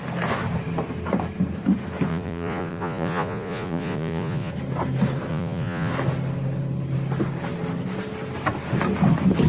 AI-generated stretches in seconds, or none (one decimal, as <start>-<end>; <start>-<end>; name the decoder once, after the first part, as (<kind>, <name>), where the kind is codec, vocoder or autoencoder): 2.1-4.5 (vocoder, Vocos); 5.3-5.9